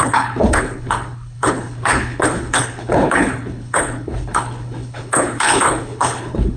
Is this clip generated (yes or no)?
yes